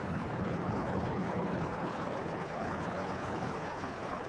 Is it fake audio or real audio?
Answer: fake